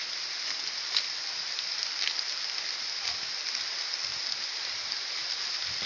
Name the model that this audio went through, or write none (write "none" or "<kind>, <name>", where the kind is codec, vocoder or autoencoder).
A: none